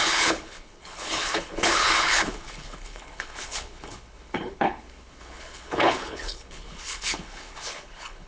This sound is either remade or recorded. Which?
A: remade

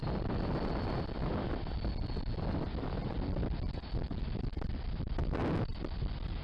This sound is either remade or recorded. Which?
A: recorded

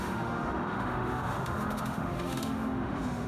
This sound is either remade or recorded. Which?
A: remade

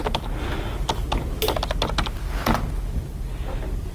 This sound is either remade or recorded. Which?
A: recorded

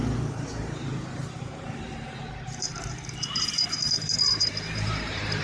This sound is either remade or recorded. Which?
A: remade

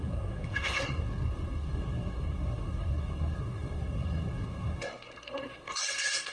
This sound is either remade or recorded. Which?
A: remade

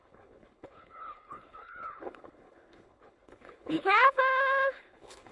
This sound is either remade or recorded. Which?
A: remade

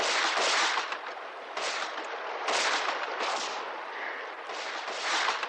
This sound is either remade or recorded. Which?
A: recorded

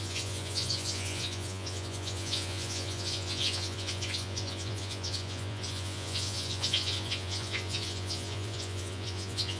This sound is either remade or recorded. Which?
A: remade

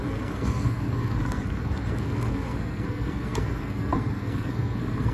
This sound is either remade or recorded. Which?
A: remade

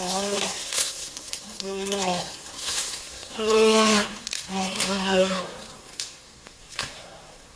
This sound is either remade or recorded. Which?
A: remade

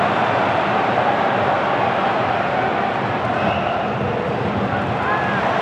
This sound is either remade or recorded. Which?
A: recorded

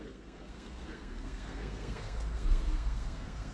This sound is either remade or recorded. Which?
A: remade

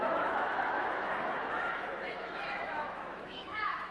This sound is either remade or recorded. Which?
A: remade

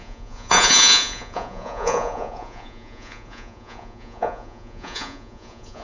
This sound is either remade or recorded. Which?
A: remade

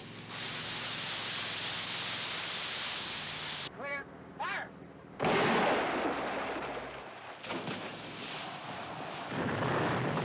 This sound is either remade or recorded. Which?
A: recorded